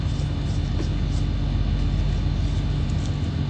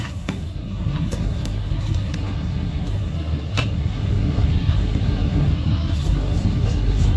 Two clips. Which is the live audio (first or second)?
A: first